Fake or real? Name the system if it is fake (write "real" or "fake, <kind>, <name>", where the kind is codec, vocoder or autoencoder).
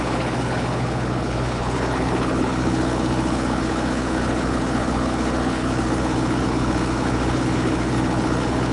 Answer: fake, codec, HILCodec